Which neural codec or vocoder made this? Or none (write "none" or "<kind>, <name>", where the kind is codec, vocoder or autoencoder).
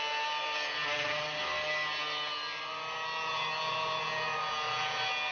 none